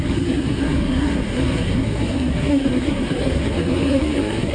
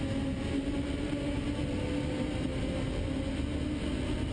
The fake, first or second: first